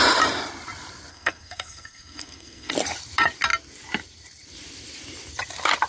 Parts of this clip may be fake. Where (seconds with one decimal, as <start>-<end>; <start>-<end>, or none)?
1.1-2.7

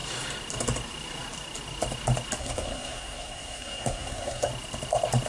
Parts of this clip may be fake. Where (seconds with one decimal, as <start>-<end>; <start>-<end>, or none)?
2.4-4.5

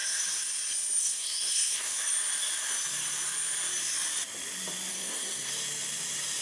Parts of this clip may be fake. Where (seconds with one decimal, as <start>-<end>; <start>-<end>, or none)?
0.0-0.5; 1.0-1.9; 4.9-5.5

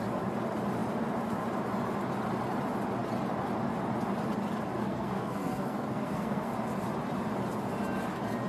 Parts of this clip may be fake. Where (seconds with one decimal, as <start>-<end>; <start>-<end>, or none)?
4.8-6.5

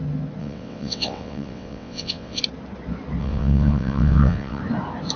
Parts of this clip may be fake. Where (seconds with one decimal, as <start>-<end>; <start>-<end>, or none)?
0.4-2.4; 3.2-4.6